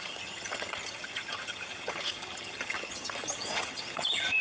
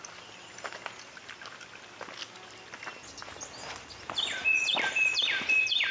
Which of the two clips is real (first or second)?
second